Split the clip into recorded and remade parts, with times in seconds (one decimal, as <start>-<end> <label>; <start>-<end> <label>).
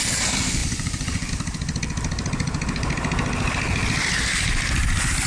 0.0-0.6 recorded; 0.6-1.3 remade; 1.3-5.3 recorded